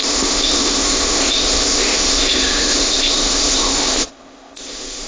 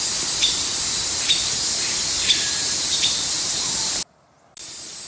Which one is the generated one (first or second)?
first